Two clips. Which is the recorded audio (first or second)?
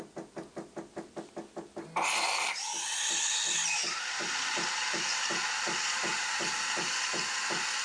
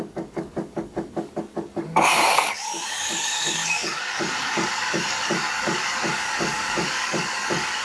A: first